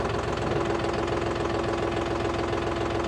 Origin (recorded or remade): recorded